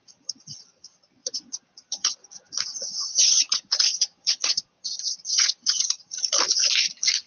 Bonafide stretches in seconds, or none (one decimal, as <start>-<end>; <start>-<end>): 0.0-1.2; 2.1-2.7; 6.2-7.3